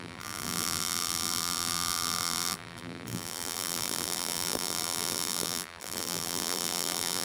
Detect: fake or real fake